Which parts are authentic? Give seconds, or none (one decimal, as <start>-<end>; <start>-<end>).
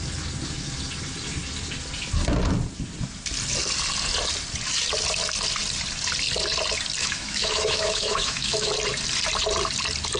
0.0-7.0; 8.7-10.2